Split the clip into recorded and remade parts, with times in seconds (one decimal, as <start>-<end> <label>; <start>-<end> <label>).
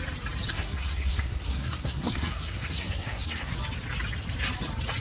0.0-0.5 recorded; 0.5-3.5 remade; 3.5-5.0 recorded